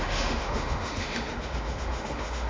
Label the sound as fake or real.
fake